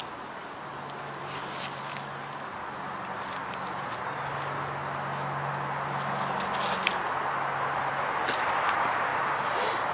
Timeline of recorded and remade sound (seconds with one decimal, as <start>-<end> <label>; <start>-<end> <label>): 0.0-9.9 recorded